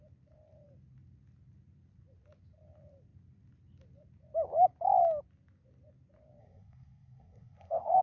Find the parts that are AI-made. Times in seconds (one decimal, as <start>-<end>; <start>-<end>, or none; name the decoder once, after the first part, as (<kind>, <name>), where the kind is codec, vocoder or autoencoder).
6.4-8.0 (codec, SNAC)